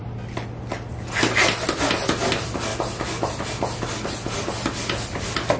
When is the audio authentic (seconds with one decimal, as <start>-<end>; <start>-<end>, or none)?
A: 0.6-5.6